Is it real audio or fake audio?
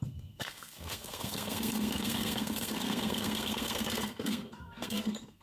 fake